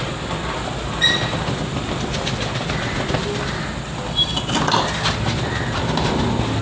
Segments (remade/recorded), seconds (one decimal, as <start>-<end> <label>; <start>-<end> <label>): 0.0-6.6 recorded